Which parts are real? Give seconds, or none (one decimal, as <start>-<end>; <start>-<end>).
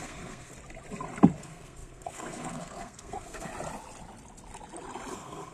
0.5-1.4; 3.5-5.1